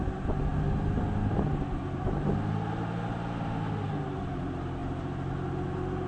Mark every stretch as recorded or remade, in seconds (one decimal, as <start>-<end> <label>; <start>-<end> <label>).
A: 0.0-6.1 recorded